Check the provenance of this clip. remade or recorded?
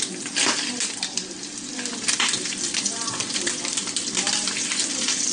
remade